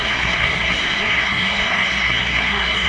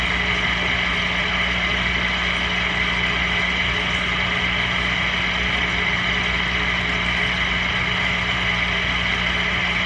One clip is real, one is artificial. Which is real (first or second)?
second